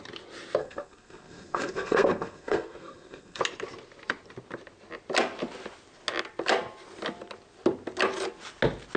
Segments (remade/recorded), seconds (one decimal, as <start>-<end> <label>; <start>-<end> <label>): 0.0-0.6 recorded; 0.6-3.4 remade; 3.4-9.0 recorded